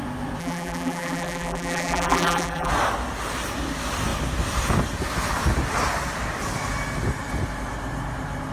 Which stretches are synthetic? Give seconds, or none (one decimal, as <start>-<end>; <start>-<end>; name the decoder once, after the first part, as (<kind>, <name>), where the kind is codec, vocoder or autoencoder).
0.4-2.7 (vocoder, BigVGAN v2)